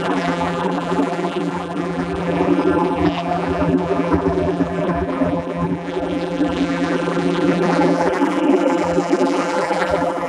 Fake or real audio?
fake